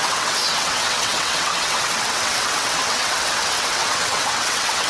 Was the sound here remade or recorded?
remade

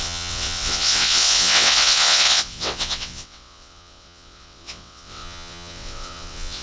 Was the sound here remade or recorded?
remade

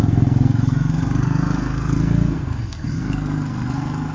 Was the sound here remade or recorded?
remade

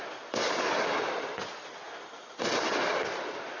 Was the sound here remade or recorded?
recorded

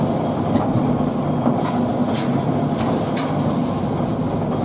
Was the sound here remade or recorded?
recorded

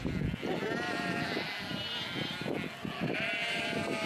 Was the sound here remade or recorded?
recorded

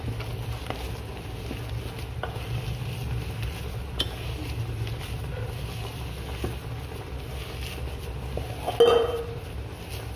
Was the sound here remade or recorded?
recorded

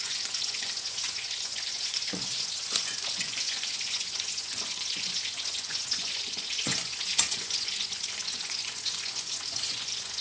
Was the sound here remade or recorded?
remade